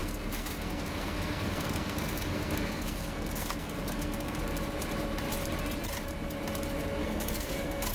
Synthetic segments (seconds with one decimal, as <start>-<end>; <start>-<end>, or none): 0.0-4.4; 7.0-7.9